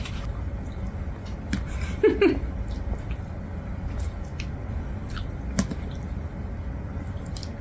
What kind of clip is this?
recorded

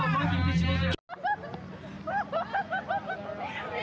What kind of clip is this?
recorded